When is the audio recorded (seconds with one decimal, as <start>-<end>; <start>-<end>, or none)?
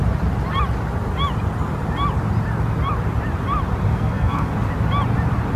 0.0-3.9; 4.5-5.6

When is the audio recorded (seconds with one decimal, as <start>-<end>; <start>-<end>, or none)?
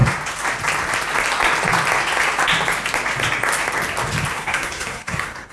0.0-4.3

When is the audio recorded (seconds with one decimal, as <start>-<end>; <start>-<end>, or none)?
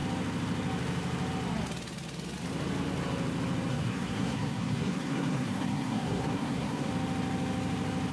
0.0-3.7; 6.9-8.1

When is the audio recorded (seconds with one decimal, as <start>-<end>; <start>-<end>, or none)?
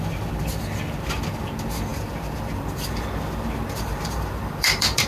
0.0-1.9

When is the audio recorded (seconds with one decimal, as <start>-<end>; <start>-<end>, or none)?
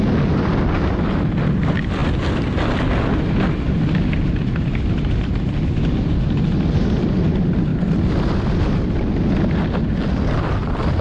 0.0-7.7; 8.4-11.0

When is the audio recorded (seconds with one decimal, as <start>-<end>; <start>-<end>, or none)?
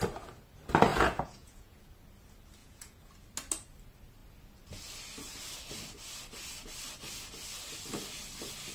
0.0-0.9; 1.8-2.6; 3.1-8.7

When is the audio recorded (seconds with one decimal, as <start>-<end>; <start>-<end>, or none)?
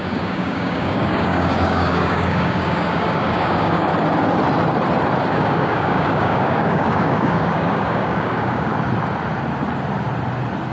3.9-5.3; 8.7-10.7